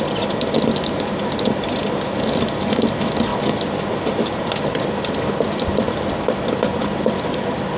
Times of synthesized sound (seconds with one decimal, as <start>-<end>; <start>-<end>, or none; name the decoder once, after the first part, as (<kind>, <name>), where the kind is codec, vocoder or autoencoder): 3.3-7.8 (vocoder, BigVGAN v2)